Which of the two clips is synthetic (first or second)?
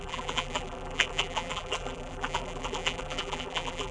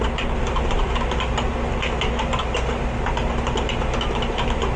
first